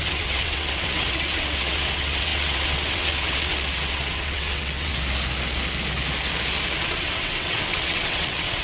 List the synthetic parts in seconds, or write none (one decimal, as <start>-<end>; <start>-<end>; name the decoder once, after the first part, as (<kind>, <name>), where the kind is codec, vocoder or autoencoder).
0.0-4.9 (vocoder, WaveNeXt); 6.8-8.6